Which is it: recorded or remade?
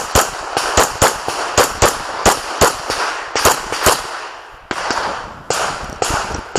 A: recorded